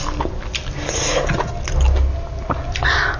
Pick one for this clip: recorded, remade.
recorded